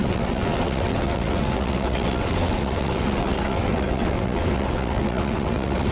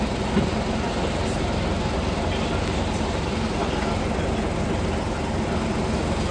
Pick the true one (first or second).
second